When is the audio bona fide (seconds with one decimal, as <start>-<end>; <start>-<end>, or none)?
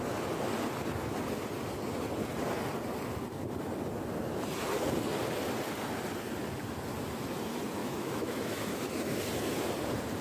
0.0-7.8; 9.2-10.2